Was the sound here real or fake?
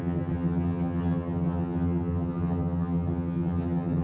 fake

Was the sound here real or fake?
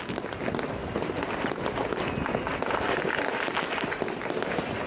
real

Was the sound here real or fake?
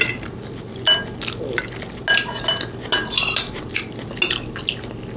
real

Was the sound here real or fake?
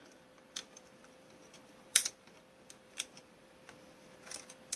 fake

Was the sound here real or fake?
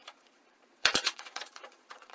fake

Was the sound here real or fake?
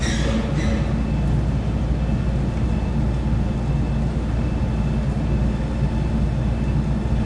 real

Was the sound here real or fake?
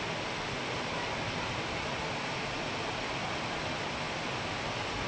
real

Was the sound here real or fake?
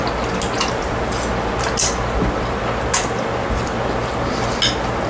real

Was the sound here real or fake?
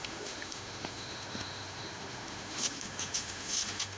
fake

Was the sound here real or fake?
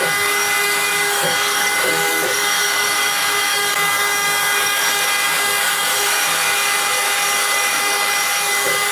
fake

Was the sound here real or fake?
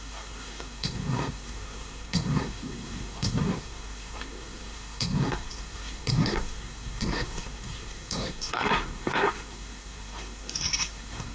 fake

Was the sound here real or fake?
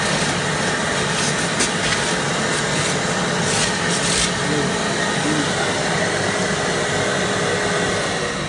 real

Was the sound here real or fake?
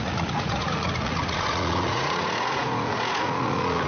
fake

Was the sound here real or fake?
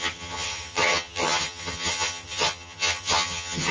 fake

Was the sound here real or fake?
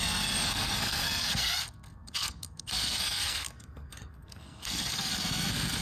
fake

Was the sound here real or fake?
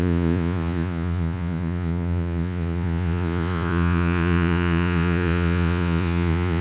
fake